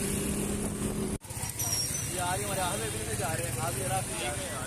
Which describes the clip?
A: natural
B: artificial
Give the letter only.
A